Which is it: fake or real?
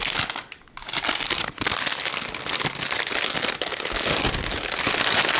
real